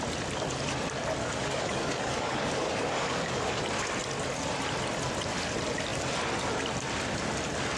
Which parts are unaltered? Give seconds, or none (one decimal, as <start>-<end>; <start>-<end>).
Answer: 0.0-1.2; 3.6-7.8